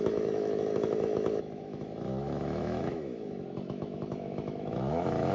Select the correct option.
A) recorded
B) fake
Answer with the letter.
B